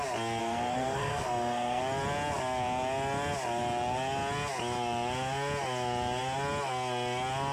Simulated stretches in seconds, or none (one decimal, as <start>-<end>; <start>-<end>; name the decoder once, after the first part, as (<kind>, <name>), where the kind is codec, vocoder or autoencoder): 0.4-1.8 (codec, SNAC)